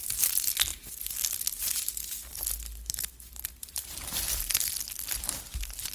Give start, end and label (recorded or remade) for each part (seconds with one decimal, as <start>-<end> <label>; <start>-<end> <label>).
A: 0.0-0.7 recorded; 0.7-4.2 remade; 4.2-5.9 recorded